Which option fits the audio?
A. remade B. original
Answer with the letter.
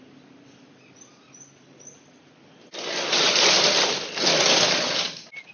B